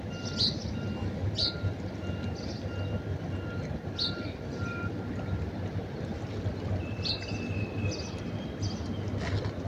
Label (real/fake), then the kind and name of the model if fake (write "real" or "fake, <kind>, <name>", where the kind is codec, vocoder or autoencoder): real